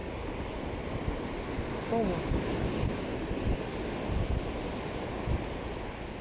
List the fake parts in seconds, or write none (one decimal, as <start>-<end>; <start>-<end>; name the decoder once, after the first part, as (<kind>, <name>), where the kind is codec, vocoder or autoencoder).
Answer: none